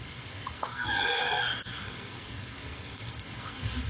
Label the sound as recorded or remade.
remade